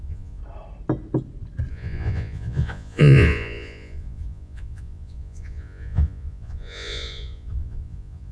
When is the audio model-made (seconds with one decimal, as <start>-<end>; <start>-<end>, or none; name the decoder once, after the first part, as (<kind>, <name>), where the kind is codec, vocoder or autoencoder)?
0.0-0.4 (vocoder, Vocos); 1.7-8.3